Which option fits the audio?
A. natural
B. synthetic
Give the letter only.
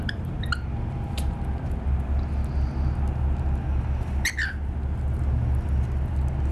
A